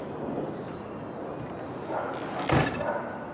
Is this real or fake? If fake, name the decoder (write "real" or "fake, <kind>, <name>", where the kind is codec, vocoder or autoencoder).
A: real